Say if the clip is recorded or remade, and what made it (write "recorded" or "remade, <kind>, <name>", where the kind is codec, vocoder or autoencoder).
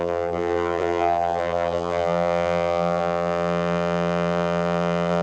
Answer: remade, vocoder, BigVGAN v2